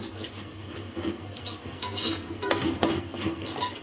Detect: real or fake fake